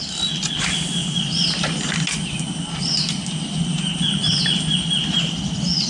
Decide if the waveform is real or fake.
real